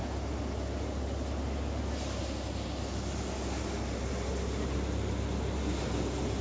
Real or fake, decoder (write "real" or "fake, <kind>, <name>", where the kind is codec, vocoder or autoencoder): real